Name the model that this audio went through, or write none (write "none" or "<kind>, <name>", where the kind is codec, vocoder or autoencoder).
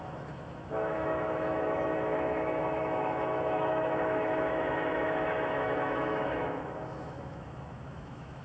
autoencoder, DAC-VAE